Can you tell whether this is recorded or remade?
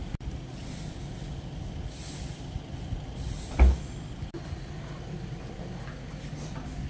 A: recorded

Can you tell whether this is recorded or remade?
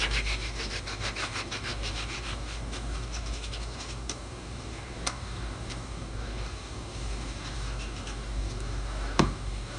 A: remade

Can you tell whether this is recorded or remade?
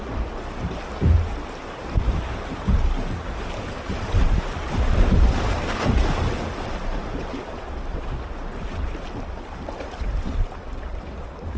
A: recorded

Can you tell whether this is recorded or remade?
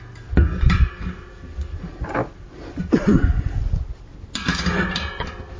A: recorded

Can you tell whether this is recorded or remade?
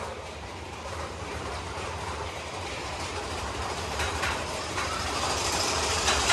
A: remade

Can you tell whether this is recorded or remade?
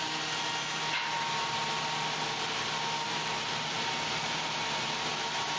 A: recorded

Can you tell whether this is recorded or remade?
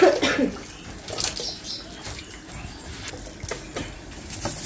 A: recorded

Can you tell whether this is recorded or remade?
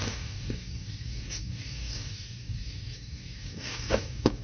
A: remade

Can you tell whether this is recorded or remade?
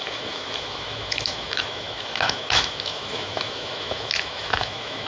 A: remade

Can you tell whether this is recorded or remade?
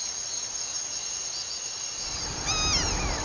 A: recorded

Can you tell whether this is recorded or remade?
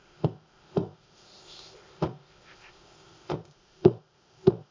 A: remade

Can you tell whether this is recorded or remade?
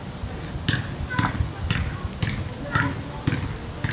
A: recorded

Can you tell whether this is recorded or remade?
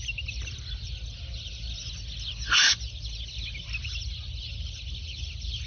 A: recorded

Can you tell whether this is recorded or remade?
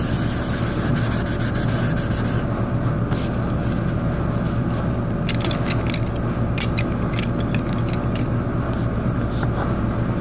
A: recorded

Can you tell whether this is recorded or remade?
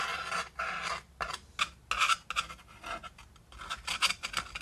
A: recorded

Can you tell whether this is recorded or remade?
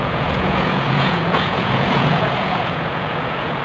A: remade